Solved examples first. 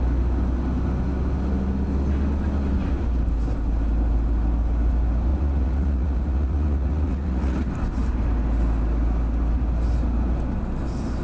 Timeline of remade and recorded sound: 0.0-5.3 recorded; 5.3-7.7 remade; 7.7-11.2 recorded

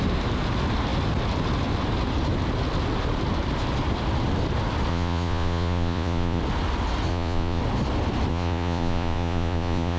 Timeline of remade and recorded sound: 0.0-4.9 recorded; 4.9-6.4 remade; 6.4-7.1 recorded; 7.1-7.6 remade; 7.6-8.3 recorded; 8.3-10.0 remade

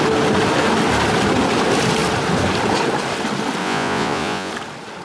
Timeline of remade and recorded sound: 0.0-3.6 recorded; 3.6-4.5 remade; 4.5-5.0 recorded

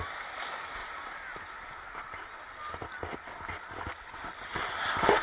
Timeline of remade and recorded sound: 0.0-5.2 recorded

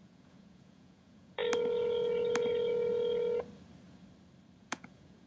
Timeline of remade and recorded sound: 0.0-1.4 remade; 1.4-4.6 recorded; 4.6-5.3 remade

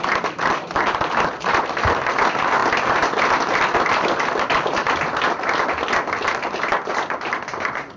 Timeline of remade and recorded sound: 0.0-8.0 recorded

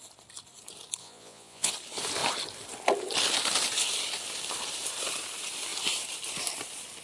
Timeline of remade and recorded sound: 0.0-1.0 recorded; 1.0-1.7 remade; 1.7-7.0 recorded